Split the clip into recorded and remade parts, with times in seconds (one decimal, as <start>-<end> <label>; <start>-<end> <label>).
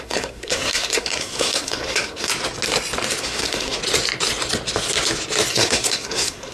0.0-2.3 remade; 2.3-3.2 recorded; 3.2-3.8 remade; 3.8-5.5 recorded; 5.5-6.5 remade